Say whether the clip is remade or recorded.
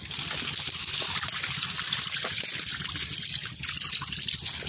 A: recorded